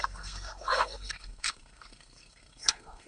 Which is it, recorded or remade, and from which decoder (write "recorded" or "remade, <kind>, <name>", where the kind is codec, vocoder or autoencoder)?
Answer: remade, codec, SNAC